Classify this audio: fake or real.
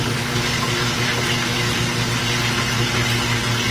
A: real